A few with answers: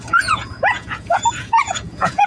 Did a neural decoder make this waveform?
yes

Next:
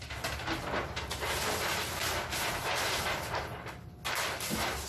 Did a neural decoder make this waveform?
no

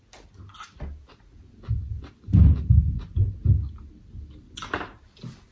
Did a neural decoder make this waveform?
no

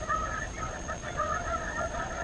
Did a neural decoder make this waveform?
yes